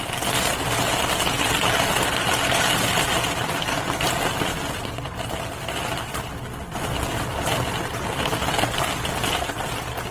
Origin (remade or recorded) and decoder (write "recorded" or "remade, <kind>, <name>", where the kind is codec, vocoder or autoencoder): recorded